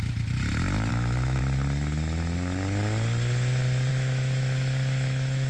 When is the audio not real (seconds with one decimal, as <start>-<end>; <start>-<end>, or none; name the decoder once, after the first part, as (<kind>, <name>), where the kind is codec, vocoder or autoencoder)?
0.9-1.4 (autoencoder, DAC-VAE); 3.9-5.5